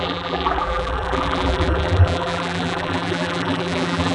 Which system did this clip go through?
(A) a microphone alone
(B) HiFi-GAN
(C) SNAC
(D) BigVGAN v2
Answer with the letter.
D